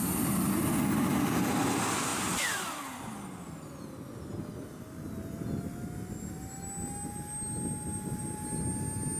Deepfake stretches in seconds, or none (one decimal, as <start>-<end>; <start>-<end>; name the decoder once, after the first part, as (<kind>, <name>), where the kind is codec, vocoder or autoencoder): none

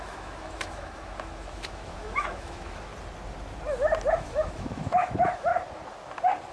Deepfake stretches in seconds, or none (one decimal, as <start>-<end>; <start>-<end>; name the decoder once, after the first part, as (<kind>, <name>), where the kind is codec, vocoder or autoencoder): 0.0-2.9 (autoencoder, DAC-VAE); 4.1-5.5

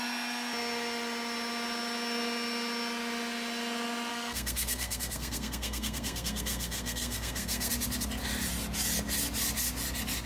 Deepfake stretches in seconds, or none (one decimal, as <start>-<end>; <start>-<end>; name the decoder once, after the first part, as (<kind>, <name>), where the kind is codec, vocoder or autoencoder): 4.1-7.7 (codec, SNAC)

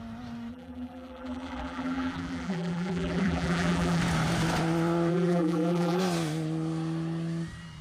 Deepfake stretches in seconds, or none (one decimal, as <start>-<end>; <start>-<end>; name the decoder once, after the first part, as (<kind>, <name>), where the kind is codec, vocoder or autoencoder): 0.5-4.0 (vocoder, BigVGAN v2); 5.1-6.0

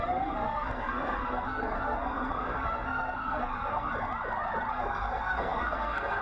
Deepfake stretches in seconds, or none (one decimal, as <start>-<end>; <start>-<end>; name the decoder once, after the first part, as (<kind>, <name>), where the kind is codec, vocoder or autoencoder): 0.0-3.9 (codec, SNAC); 4.7-6.2

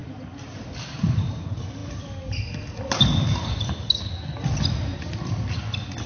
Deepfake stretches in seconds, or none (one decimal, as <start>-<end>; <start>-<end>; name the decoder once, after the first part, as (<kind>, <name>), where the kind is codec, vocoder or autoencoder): none